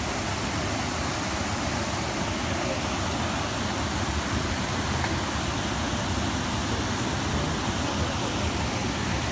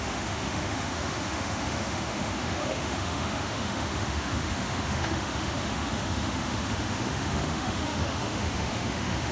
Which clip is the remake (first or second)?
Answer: second